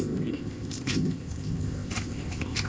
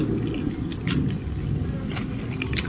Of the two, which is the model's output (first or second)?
first